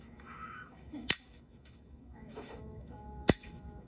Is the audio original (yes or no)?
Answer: no